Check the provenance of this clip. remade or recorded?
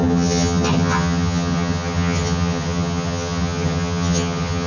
remade